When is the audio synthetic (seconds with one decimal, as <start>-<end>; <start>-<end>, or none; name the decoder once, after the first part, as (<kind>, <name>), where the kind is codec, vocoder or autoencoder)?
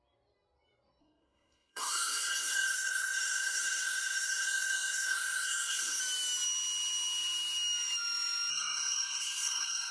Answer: 1.0-6.0 (codec, SNAC); 8.5-9.9